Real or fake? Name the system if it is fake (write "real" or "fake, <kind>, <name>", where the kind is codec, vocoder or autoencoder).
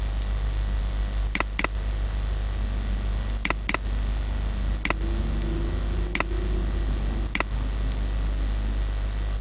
real